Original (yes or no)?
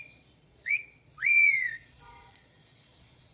no